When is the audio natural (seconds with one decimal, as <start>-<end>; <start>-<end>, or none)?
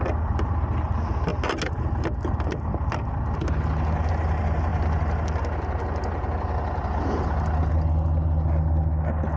0.0-9.4